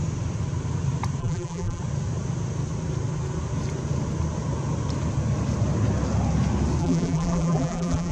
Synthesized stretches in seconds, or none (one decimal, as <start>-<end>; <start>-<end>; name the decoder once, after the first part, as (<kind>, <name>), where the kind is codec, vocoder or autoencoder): 1.2-1.8 (vocoder, BigVGAN v2); 6.8-8.1